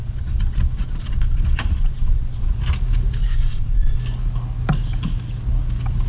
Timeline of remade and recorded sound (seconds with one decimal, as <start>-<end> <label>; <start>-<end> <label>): 0.0-2.6 remade; 2.6-3.2 recorded; 3.2-4.0 remade; 4.0-6.1 recorded